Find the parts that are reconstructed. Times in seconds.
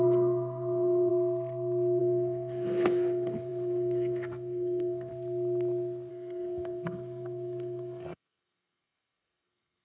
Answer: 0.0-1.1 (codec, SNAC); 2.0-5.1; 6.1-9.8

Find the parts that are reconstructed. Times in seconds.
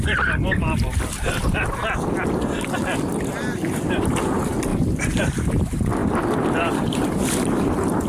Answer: 0.0-1.8 (vocoder, BigVGAN v2); 3.3-8.1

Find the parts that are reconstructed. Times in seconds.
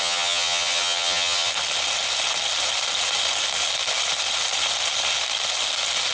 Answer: 0.0-1.5 (vocoder, HiFi-GAN)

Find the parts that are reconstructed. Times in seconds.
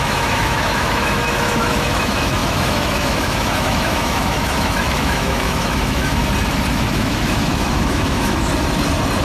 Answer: 0.0-6.2 (autoencoder, DAC-VAE); 6.7-8.5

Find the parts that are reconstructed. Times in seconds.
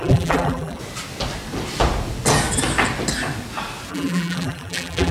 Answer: 0.0-0.8 (vocoder, BigVGAN v2); 3.9-5.1